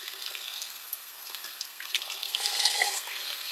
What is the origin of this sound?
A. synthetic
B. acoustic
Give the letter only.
A